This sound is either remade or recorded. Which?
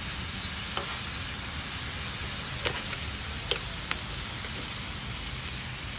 recorded